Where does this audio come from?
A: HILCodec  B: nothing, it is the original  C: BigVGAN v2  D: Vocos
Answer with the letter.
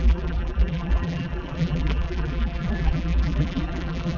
C